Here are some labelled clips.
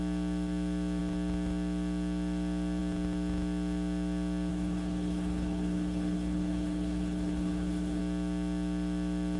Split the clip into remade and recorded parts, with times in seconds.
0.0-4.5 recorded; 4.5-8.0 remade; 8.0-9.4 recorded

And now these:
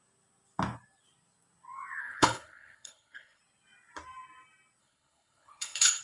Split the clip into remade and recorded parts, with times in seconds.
0.0-2.0 recorded; 2.0-3.4 remade; 3.4-4.8 recorded; 4.8-6.0 remade

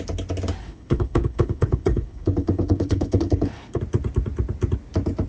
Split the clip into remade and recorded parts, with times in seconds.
0.0-0.6 recorded; 0.6-3.8 remade; 3.8-5.3 recorded

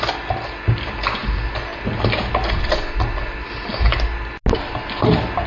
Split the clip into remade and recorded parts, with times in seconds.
0.0-5.5 recorded

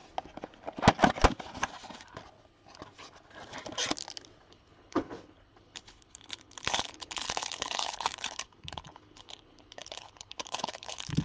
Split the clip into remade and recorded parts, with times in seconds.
0.0-4.5 recorded; 4.5-11.2 remade

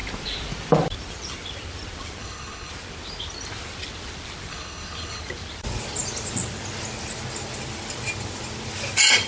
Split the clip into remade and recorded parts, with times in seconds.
0.0-2.2 recorded; 2.2-2.7 remade; 2.7-4.5 recorded; 4.5-5.2 remade; 5.2-9.3 recorded

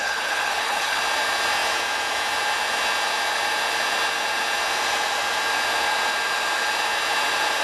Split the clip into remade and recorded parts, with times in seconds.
0.0-1.0 remade; 1.0-7.6 recorded

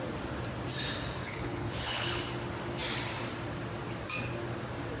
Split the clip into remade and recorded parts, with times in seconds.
0.0-1.2 recorded; 1.2-2.2 remade; 2.2-5.0 recorded